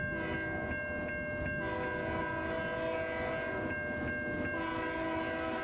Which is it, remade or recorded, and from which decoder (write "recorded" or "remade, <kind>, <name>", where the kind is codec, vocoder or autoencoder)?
recorded